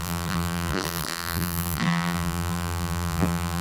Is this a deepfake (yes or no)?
yes